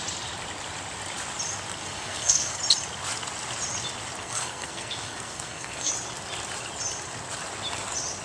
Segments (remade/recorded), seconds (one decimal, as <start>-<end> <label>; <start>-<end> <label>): 0.0-1.8 recorded; 1.8-2.6 remade; 2.6-4.2 recorded; 4.2-5.9 remade; 5.9-8.2 recorded